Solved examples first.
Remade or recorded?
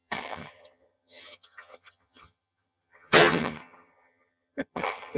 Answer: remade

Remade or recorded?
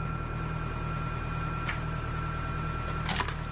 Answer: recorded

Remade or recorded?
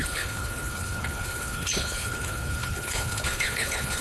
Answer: remade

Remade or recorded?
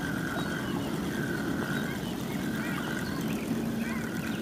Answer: recorded